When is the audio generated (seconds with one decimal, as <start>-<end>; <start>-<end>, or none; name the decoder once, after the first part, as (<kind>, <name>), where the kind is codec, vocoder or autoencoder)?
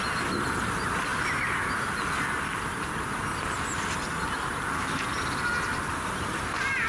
none